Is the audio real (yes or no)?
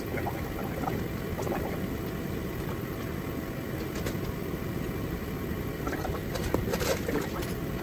yes